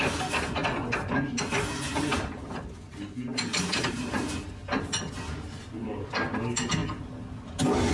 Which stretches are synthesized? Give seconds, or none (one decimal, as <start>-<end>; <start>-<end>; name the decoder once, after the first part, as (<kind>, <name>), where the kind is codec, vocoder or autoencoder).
3.3-4.3 (vocoder, BigVGAN v2)